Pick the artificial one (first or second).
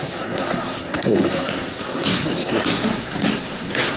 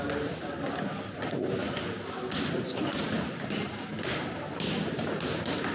first